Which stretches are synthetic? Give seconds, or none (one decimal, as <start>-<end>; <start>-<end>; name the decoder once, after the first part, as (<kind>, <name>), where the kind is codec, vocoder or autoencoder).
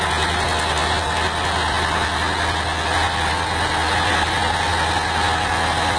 none